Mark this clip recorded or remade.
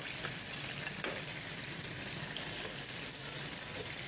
recorded